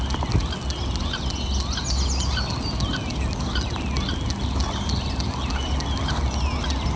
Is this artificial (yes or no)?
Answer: no